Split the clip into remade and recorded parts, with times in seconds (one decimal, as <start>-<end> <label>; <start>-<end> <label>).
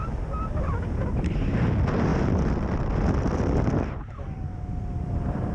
0.0-2.1 recorded; 2.1-5.5 remade